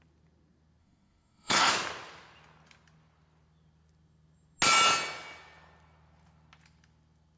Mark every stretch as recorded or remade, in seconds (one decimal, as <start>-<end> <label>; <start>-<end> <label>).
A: 0.0-0.8 recorded; 0.8-1.7 remade; 1.7-7.4 recorded